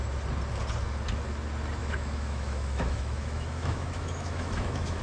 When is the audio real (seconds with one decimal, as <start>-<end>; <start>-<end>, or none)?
0.0-1.8